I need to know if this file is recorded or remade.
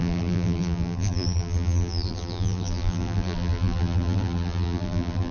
remade